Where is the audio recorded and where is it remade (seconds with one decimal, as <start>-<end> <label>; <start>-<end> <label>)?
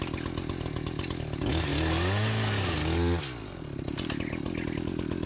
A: 0.0-5.3 recorded